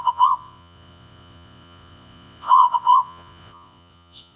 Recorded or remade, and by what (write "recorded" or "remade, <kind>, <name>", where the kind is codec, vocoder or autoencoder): remade, vocoder, Vocos